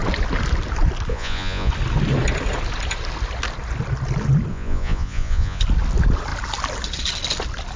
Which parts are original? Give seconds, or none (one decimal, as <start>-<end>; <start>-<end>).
0.0-1.1; 1.7-4.5; 5.6-7.8